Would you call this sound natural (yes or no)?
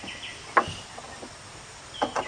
yes